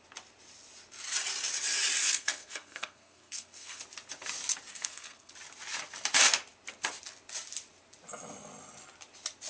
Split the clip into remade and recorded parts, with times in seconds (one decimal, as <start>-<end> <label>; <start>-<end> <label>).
0.0-2.0 recorded; 2.0-3.8 remade; 3.8-4.7 recorded; 4.7-5.3 remade; 5.3-9.5 recorded